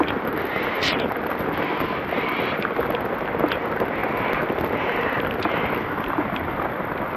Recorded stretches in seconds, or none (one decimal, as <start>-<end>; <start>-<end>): 0.0-7.2